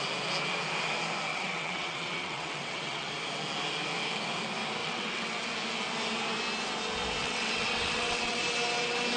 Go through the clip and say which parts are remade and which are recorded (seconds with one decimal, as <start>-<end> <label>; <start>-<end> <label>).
0.0-1.3 recorded; 1.3-3.1 remade; 3.1-4.8 recorded; 4.8-5.3 remade; 5.3-7.2 recorded; 7.2-8.4 remade; 8.4-9.2 recorded